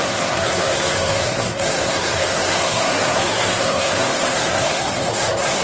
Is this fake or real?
fake